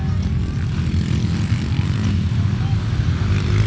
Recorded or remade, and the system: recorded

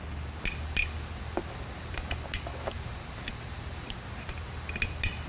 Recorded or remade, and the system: recorded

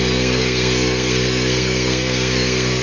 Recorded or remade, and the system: remade, codec, SNAC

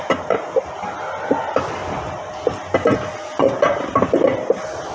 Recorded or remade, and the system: recorded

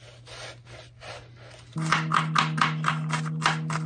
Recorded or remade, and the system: recorded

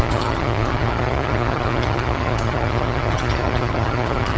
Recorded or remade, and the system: remade, vocoder, HiFi-GAN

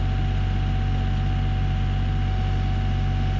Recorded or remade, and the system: recorded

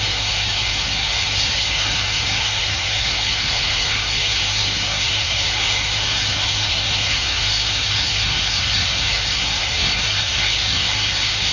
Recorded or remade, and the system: remade, codec, SNAC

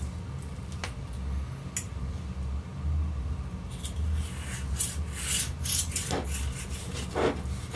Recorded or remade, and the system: recorded